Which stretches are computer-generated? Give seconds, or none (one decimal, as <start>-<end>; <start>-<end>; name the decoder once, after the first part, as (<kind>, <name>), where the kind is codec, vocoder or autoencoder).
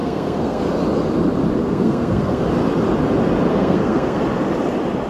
0.0-0.6 (codec, SNAC); 1.6-2.4; 3.5-4.2